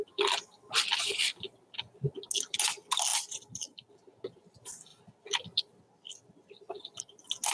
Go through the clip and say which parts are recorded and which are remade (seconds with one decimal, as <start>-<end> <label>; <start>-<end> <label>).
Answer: 0.0-3.1 recorded; 3.1-3.9 remade; 3.9-4.9 recorded; 4.9-7.0 remade; 7.0-7.5 recorded